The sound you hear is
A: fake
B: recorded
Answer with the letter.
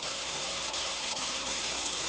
A